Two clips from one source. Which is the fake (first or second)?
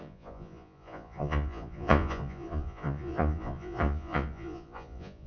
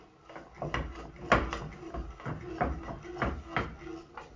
first